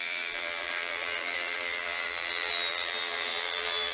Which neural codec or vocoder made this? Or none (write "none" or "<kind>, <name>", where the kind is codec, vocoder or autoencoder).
vocoder, BigVGAN v2